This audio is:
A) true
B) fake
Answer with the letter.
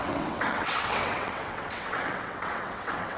B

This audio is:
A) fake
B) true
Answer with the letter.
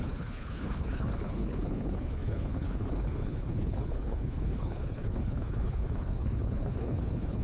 A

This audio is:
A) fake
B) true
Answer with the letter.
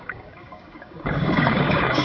A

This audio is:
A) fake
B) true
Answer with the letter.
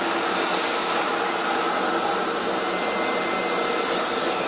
B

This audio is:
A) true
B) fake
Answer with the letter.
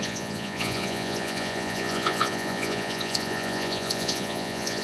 B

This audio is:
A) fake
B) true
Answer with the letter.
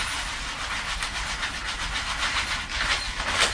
B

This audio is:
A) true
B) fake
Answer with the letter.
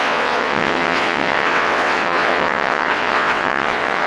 B